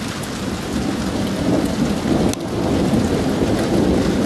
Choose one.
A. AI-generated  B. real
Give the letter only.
B